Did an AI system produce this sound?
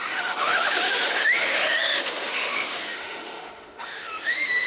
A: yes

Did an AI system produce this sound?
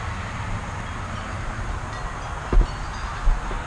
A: no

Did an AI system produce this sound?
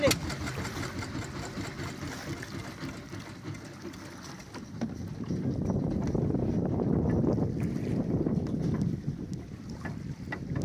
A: no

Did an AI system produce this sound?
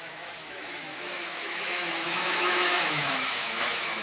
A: yes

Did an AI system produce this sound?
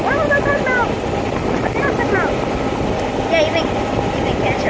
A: no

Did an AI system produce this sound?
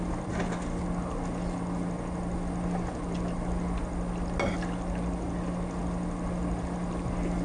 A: no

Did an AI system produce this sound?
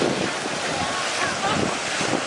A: no